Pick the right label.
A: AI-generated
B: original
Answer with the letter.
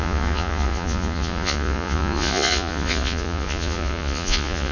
A